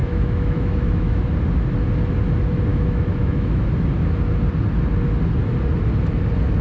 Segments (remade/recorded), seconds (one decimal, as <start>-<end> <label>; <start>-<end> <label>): 0.0-1.2 remade; 1.2-2.7 recorded; 2.7-3.6 remade; 3.6-6.6 recorded